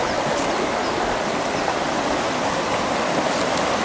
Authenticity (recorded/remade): recorded